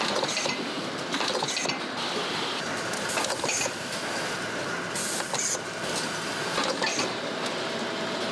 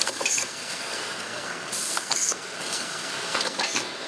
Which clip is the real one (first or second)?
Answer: first